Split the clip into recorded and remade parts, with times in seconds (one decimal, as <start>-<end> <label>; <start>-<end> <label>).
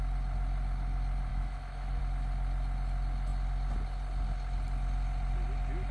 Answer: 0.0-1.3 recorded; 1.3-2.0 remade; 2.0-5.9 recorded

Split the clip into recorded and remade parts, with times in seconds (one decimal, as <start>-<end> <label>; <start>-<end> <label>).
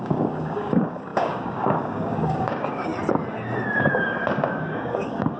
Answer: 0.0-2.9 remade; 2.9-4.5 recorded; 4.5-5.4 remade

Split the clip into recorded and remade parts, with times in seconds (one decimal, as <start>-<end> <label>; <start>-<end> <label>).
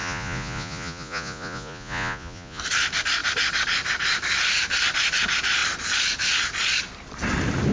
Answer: 0.0-2.6 remade; 2.6-7.7 recorded